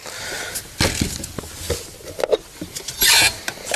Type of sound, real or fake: real